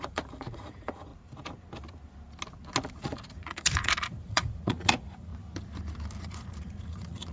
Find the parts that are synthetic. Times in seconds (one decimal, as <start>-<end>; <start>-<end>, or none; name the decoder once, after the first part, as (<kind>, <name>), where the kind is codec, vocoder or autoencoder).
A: 0.0-1.1 (vocoder, Vocos); 2.9-5.3; 6.2-7.3

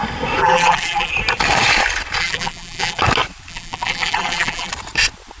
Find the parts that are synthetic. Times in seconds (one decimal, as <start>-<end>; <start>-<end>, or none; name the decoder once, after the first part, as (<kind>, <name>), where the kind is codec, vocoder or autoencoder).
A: 0.4-1.1 (vocoder, BigVGAN v2); 2.2-3.0; 3.5-4.7

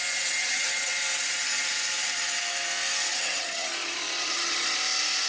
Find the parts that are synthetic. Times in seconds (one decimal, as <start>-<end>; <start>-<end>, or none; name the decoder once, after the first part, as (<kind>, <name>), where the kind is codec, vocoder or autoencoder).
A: 0.4-0.9 (vocoder, HiFi-GAN); 3.1-4.8

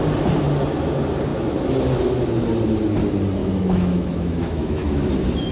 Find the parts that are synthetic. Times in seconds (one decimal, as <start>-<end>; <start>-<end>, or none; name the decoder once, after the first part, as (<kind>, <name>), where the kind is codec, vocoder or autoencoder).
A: 3.4-5.1 (autoencoder, DAC-VAE)

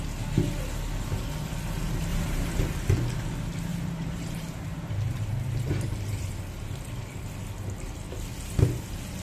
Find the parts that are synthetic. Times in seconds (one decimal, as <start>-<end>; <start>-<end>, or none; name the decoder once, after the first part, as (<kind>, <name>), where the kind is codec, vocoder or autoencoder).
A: 2.1-2.6 (vocoder, BigVGAN v2); 3.7-6.3

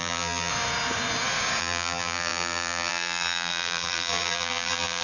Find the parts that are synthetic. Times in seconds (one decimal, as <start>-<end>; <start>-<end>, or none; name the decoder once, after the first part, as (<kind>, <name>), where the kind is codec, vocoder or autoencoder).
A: 0.0-0.5 (vocoder, BigVGAN v2); 1.6-5.0

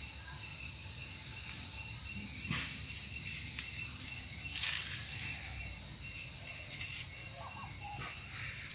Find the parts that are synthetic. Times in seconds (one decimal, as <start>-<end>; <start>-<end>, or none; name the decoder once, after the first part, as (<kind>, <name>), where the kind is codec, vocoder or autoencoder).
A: 0.5-3.1 (vocoder, BigVGAN v2)

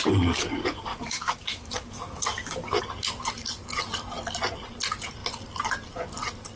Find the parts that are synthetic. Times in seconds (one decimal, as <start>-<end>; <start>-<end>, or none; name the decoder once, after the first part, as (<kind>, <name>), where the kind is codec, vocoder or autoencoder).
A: 0.9-2.8 (autoencoder, DAC-VAE)